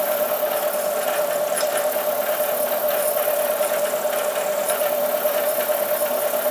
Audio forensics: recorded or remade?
recorded